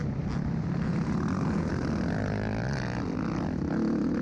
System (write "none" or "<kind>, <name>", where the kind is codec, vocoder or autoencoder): none